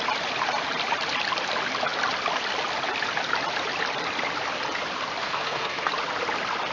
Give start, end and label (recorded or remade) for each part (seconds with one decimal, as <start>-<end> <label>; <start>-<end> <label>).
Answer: 0.0-5.2 recorded; 5.2-5.9 remade; 5.9-6.7 recorded